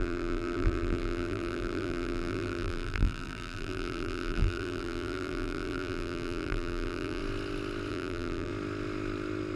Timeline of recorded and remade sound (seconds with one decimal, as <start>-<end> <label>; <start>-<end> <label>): 0.0-7.2 remade; 7.2-7.9 recorded; 7.9-8.5 remade; 8.5-9.6 recorded